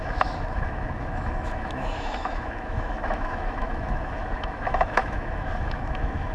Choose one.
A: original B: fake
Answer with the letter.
B